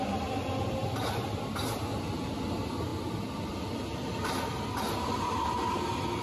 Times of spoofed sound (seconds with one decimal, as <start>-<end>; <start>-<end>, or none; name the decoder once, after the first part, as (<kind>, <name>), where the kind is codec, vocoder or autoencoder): none